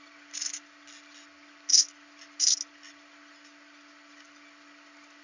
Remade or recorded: recorded